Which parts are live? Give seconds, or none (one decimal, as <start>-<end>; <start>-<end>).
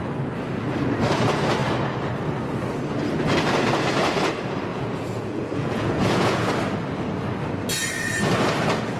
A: 0.0-4.7; 6.5-9.0